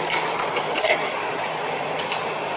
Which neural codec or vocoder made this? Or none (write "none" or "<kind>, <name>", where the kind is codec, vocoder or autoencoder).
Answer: none